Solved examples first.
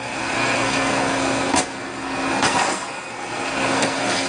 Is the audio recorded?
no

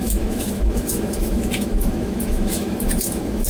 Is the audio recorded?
no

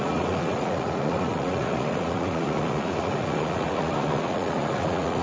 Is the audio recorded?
no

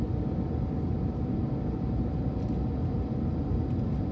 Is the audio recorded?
yes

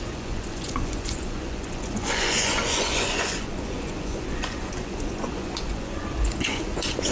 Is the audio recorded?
no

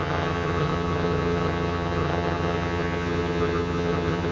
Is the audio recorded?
no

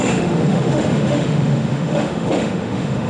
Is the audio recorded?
no